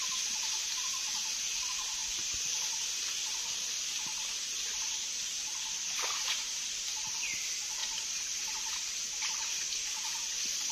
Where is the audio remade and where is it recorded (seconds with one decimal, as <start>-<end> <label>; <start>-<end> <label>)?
0.0-10.7 recorded